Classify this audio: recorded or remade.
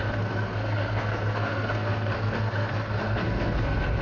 remade